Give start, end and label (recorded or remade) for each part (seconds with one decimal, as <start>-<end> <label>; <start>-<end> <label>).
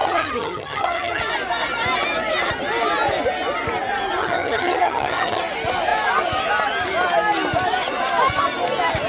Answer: 0.0-1.2 remade; 1.2-4.2 recorded; 4.2-5.4 remade; 5.4-9.1 recorded